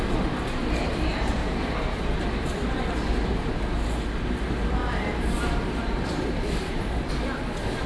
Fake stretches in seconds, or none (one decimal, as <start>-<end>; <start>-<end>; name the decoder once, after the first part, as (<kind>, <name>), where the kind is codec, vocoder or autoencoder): 1.4-1.9 (vocoder, BigVGAN v2); 4.8-7.1